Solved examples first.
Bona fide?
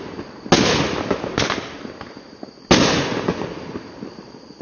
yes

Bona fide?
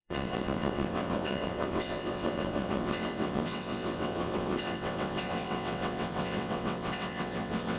no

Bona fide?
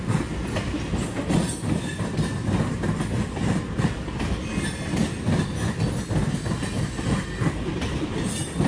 yes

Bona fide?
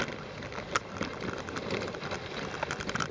yes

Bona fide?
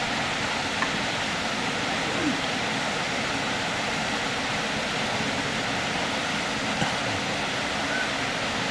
yes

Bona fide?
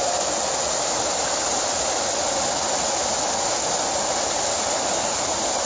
yes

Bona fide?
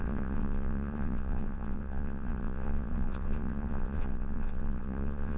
no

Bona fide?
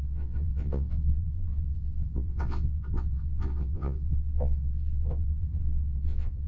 no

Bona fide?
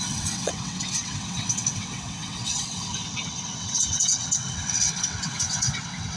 no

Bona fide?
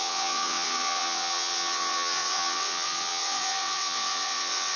no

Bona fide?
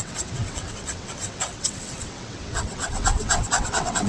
no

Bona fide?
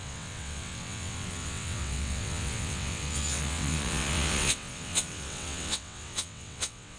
no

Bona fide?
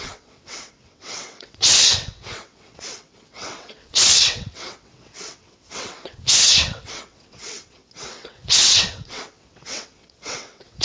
no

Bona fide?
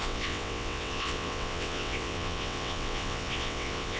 no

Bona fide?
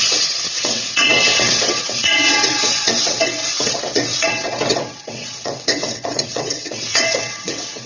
no